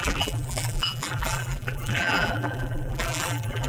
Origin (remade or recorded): remade